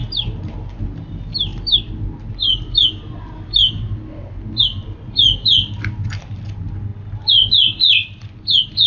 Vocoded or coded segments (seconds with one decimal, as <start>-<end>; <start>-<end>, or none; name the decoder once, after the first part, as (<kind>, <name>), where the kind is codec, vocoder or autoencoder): none